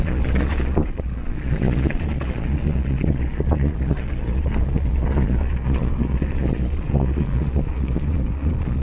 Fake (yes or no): yes